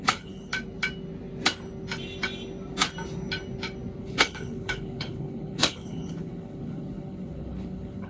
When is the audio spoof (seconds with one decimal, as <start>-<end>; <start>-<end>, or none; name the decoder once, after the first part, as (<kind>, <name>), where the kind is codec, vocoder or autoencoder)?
0.0-0.5 (codec, HILCodec); 4.0-8.1